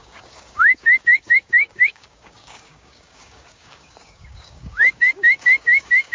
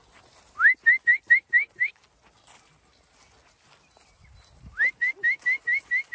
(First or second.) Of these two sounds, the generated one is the first